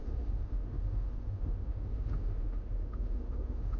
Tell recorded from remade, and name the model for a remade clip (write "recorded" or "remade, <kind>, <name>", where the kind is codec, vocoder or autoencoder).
remade, autoencoder, DAC-VAE